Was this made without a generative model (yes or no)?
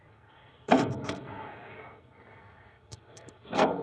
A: no